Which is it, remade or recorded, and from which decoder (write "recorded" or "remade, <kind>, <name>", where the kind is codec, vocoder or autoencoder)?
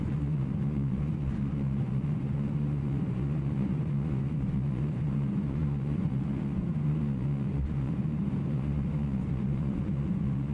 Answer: remade, vocoder, Vocos